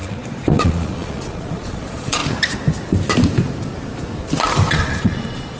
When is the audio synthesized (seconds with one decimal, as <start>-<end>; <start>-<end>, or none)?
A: 0.0-2.2; 4.7-5.6